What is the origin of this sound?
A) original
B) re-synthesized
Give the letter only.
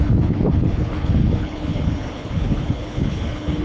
B